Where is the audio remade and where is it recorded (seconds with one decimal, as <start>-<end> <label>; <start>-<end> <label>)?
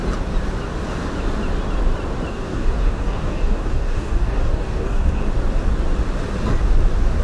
0.0-2.3 recorded; 2.3-5.2 remade; 5.2-7.2 recorded